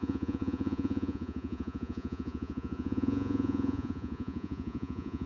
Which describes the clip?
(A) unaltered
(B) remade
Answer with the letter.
B